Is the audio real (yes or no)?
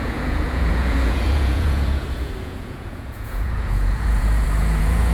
no